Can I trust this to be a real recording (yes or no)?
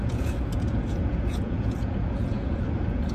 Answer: no